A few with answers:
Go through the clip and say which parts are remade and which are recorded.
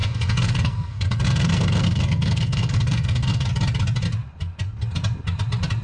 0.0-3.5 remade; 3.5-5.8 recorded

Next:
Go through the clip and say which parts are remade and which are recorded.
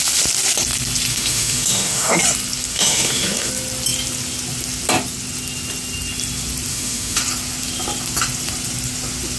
0.0-1.1 recorded; 1.1-2.2 remade; 2.2-2.7 recorded; 2.7-3.5 remade; 3.5-6.7 recorded; 6.7-7.2 remade; 7.2-9.4 recorded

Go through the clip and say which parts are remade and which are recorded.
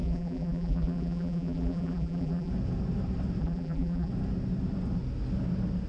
0.0-2.5 remade; 2.5-3.4 recorded; 3.4-4.1 remade; 4.1-5.9 recorded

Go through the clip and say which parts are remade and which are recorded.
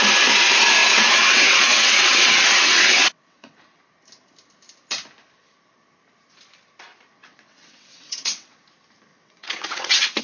0.0-0.8 recorded; 0.8-3.8 remade; 3.8-7.1 recorded; 7.1-8.6 remade; 8.6-9.1 recorded; 9.1-10.2 remade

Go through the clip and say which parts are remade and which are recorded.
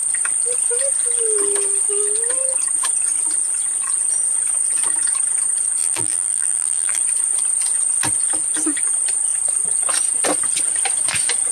0.0-5.8 recorded; 5.8-7.0 remade; 7.0-11.5 recorded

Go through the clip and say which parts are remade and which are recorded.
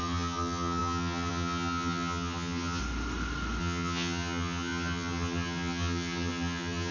0.0-2.8 remade; 2.8-3.6 recorded; 3.6-6.9 remade